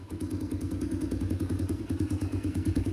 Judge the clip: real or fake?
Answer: fake